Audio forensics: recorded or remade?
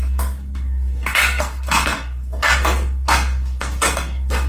remade